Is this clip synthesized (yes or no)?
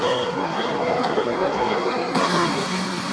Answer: yes